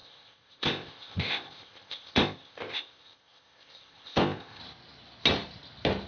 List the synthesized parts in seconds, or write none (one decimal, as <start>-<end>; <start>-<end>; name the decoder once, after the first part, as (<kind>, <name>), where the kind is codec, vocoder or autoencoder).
0.0-4.6 (codec, ZipCodec)